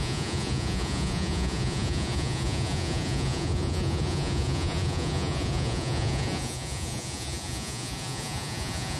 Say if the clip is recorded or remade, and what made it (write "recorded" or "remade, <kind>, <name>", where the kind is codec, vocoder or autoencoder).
remade, vocoder, Vocos